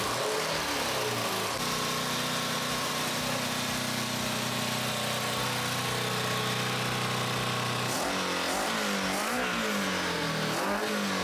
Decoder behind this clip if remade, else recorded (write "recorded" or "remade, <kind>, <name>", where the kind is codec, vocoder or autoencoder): recorded